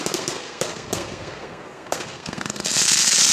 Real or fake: fake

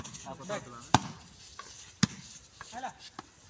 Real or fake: real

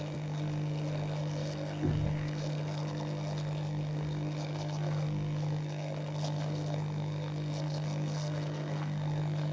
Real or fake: fake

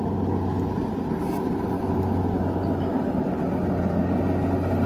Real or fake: real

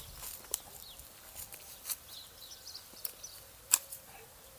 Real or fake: real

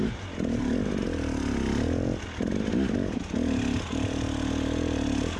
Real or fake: real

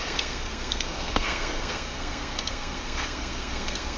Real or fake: fake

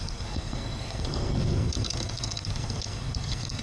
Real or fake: fake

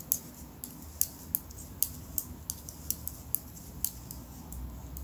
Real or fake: real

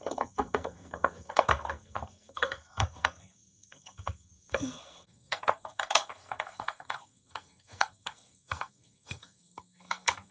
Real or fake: fake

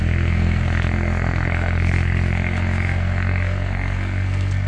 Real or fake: fake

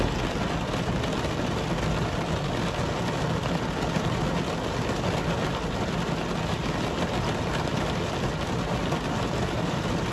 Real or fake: real